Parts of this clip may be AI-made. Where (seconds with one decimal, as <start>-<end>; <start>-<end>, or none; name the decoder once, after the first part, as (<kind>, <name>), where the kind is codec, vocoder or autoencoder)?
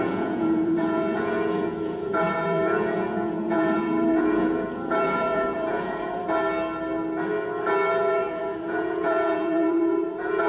0.0-6.2 (vocoder, Vocos); 7.9-10.5